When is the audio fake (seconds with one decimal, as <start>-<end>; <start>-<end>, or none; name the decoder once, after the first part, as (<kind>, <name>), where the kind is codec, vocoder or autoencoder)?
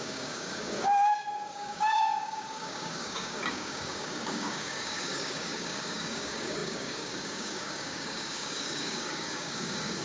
0.0-10.0 (codec, DAC)